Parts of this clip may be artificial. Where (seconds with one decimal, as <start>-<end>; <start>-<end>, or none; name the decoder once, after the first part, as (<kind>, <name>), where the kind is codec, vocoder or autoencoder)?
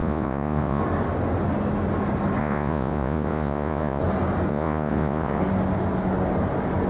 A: 0.0-0.8 (vocoder, Vocos); 2.4-4.0; 4.5-5.4